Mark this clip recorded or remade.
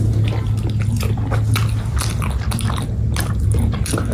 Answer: recorded